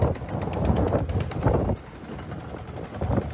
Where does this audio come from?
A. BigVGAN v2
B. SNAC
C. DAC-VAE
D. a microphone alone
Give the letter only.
D